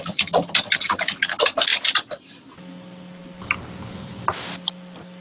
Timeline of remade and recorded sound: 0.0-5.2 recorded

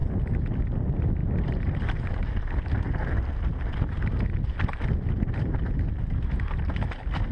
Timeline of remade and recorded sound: 0.0-7.3 recorded

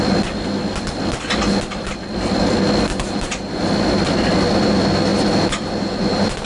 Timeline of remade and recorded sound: 0.0-2.9 recorded; 2.9-3.6 remade; 3.6-6.4 recorded

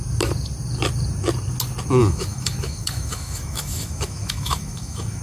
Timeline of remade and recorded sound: 0.0-2.0 recorded; 2.0-5.2 remade